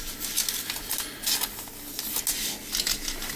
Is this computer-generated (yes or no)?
no